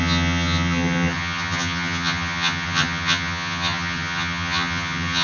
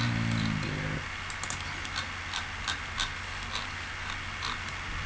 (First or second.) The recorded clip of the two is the second